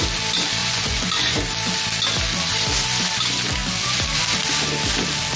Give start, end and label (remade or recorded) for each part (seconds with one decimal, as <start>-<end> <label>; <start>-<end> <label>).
0.0-0.6 recorded; 0.6-1.4 remade; 1.4-5.4 recorded